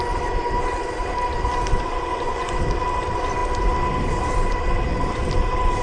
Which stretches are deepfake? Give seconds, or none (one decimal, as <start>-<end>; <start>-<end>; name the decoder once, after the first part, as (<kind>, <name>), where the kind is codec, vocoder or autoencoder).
2.1-2.6 (vocoder, Vocos)

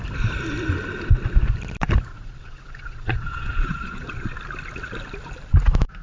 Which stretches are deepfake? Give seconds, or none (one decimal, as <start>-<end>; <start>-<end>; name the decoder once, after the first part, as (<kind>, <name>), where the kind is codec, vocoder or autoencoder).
2.1-4.4 (vocoder, Vocos)

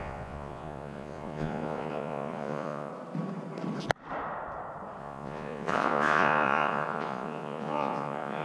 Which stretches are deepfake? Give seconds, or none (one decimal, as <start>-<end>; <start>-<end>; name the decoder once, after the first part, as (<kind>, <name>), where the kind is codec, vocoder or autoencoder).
0.0-2.9 (vocoder, Vocos); 5.0-8.4

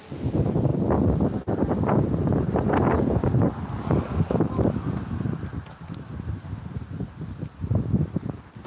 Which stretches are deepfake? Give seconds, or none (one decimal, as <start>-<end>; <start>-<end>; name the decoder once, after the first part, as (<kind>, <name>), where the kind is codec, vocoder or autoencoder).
none

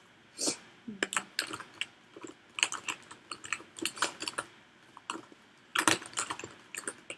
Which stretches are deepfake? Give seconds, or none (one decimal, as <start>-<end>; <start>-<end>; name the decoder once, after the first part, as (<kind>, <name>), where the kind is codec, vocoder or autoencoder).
none

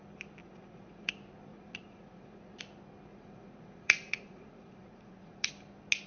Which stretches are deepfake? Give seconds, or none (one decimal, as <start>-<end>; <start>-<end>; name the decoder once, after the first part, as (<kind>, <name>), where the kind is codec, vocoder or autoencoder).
0.4-1.1 (vocoder, Vocos); 1.5-2.6; 3.1-5.5